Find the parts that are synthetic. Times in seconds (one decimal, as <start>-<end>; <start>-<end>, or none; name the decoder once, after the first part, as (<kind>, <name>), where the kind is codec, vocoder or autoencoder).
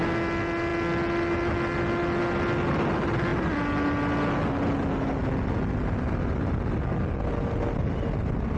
none